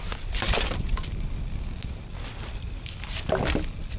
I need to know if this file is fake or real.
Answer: real